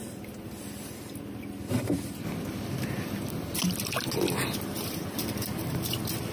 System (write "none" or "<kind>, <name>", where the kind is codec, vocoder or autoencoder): none